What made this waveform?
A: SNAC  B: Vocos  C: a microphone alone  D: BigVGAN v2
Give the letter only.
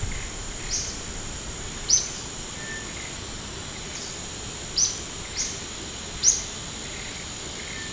C